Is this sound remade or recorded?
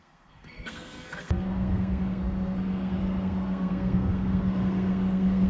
remade